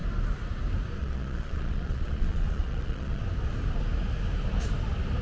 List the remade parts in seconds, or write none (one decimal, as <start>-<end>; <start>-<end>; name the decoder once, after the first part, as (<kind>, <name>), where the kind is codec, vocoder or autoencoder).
1.0-3.2 (vocoder, Vocos)